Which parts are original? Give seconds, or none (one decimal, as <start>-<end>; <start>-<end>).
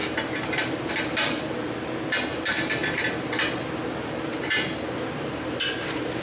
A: 0.9-2.3; 3.0-6.2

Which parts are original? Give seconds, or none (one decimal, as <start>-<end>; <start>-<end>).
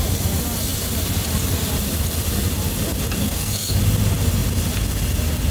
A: 0.0-3.2; 3.8-5.5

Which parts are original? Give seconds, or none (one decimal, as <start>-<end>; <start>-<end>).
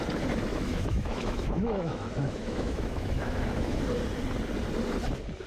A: 0.0-0.5; 3.8-5.5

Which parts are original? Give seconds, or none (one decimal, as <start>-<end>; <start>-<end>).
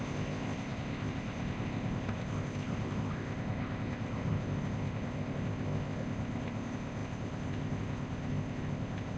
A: none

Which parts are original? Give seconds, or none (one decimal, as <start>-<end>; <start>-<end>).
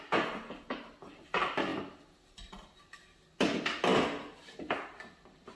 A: 0.0-5.6